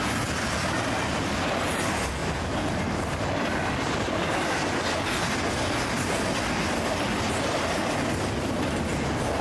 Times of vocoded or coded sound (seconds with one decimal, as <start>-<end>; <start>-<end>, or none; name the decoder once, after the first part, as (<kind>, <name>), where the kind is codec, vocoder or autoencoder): none